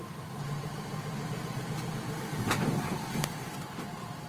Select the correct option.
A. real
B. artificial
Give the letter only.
B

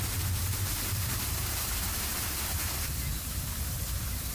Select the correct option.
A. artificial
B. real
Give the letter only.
A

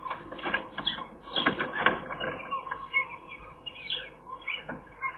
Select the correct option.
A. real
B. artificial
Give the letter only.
A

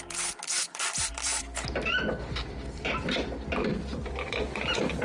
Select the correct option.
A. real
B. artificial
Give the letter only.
B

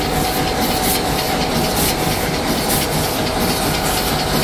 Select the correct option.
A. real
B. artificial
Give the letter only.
A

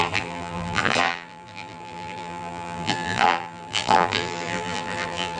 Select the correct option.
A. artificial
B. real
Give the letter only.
A